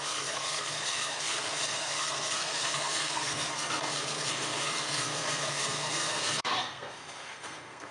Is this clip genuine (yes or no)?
no